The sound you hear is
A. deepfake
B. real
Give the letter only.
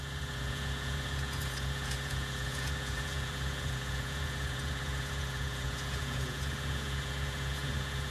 A